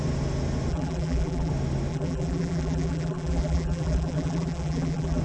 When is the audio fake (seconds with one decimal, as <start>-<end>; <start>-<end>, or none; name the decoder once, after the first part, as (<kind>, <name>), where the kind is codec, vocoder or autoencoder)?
0.7-1.5 (vocoder, BigVGAN v2); 1.9-5.2